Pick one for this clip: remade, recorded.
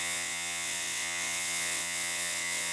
remade